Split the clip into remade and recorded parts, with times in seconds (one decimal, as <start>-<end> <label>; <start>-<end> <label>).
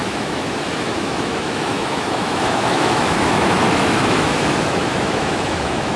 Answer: 0.0-6.0 remade